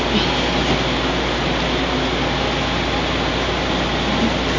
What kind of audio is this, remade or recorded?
recorded